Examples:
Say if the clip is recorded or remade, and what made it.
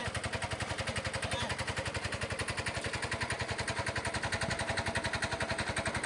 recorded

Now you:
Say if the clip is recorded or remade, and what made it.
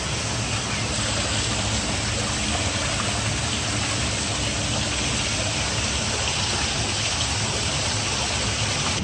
recorded